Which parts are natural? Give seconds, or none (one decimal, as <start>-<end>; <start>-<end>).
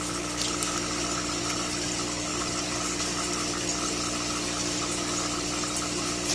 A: 0.0-2.3